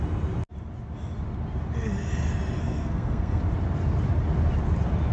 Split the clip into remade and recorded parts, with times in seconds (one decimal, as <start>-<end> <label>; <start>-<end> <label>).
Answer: 0.0-2.6 recorded; 2.6-3.4 remade; 3.4-5.1 recorded